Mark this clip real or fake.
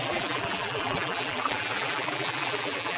fake